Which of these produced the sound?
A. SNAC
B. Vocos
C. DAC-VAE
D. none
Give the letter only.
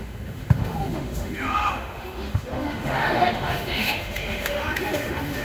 C